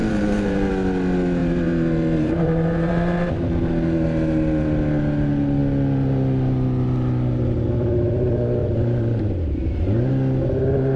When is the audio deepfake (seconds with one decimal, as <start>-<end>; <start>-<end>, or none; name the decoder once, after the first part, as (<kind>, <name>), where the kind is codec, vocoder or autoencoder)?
0.0-0.7 (vocoder, BigVGAN v2); 1.4-3.3; 8.6-10.1